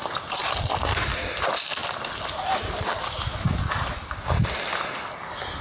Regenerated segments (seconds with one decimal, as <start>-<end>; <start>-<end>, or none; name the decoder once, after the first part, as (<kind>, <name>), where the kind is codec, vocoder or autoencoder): none